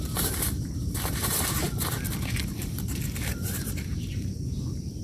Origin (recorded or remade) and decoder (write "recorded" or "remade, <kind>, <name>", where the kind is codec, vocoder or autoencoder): remade, vocoder, BigVGAN v2